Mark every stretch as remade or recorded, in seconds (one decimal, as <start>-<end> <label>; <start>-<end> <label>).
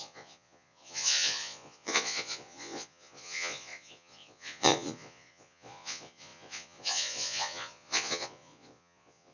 0.0-9.3 remade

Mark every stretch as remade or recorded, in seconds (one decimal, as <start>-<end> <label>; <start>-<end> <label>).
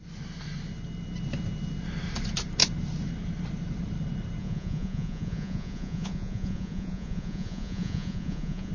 0.0-4.4 recorded; 4.4-8.7 remade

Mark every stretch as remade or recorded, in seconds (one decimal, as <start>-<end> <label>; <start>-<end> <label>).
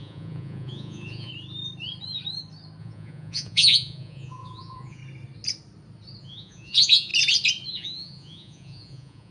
0.0-1.3 remade; 1.3-2.8 recorded; 2.8-5.0 remade; 5.0-6.2 recorded; 6.2-7.1 remade; 7.1-7.7 recorded; 7.7-9.3 remade